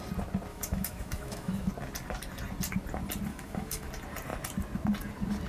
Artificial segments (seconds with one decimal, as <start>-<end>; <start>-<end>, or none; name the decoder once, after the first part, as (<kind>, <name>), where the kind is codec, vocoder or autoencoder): 0.5-1.7 (autoencoder, DAC-VAE); 3.3-3.9